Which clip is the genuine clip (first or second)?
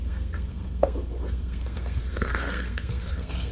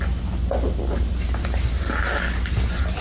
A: second